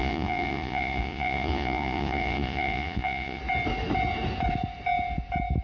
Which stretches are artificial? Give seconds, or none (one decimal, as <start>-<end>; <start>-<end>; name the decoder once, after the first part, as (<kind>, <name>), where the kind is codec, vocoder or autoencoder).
0.0-3.4 (vocoder, Vocos)